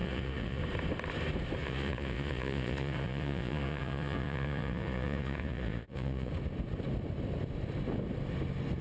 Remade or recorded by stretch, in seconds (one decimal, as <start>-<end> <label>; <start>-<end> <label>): 0.0-0.6 remade; 0.6-1.6 recorded; 1.6-6.3 remade; 6.3-8.8 recorded